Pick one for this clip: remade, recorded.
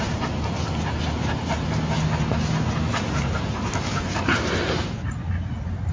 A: recorded